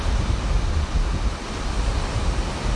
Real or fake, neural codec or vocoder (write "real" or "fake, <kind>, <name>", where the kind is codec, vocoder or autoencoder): real